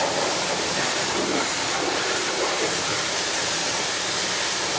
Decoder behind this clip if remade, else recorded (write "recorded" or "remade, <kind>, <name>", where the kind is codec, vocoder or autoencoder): remade, vocoder, BigVGAN v2